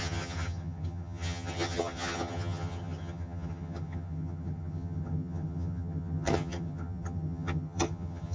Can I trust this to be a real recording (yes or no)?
no